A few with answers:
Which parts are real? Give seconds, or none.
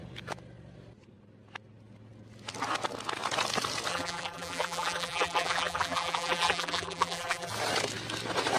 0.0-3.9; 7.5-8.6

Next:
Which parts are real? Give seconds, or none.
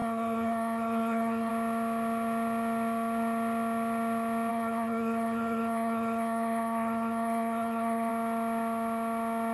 1.5-4.5; 8.1-9.5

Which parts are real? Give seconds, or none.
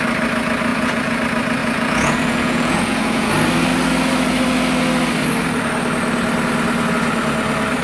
0.0-0.7; 1.2-1.6; 3.3-7.8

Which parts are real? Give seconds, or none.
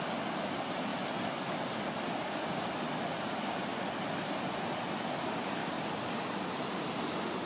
0.0-7.5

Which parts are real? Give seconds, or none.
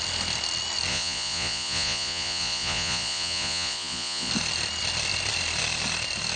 0.0-0.9; 4.3-6.4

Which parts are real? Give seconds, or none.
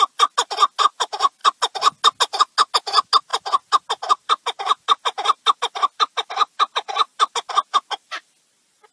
0.0-8.9